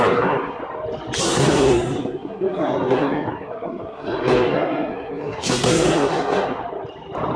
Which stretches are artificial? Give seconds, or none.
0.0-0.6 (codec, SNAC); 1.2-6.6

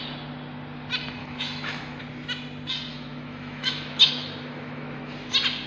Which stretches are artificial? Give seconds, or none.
1.2-2.0 (autoencoder, DAC-VAE); 2.9-5.0

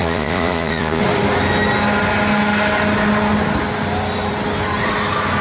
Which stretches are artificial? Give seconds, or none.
0.0-1.0 (vocoder, Vocos)

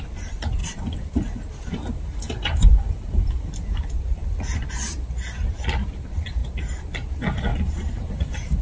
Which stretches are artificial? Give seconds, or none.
0.6-3.5 (vocoder, BigVGAN v2); 7.5-8.6

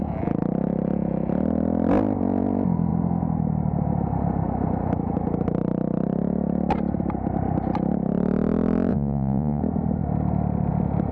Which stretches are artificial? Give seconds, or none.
8.9-9.6 (vocoder, Vocos)